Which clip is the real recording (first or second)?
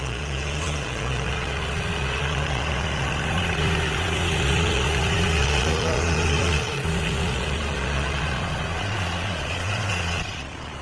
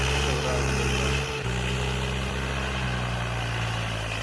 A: second